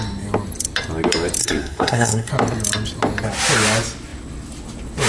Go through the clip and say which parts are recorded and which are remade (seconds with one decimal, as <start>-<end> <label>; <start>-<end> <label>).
0.0-1.4 recorded; 1.4-2.3 remade; 2.3-5.1 recorded